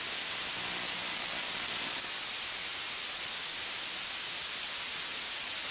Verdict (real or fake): real